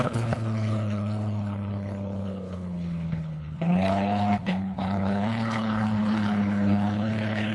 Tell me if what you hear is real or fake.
fake